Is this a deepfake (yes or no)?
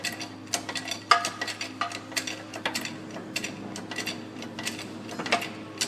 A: no